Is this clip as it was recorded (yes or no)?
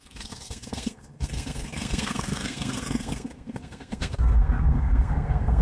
no